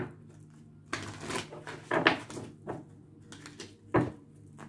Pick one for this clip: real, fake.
real